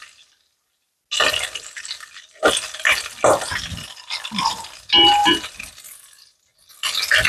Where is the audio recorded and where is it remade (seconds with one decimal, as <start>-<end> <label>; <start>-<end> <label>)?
0.0-7.3 recorded